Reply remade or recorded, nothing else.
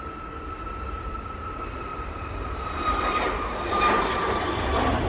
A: recorded